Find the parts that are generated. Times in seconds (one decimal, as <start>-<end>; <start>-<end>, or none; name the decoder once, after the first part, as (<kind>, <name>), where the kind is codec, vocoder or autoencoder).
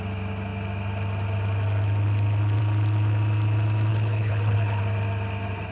3.9-4.8 (codec, HILCodec)